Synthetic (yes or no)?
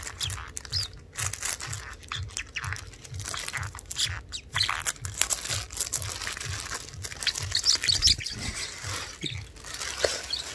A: no